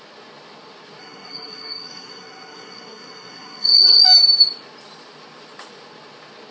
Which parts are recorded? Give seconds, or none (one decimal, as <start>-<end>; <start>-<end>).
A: 0.0-1.0; 4.0-6.5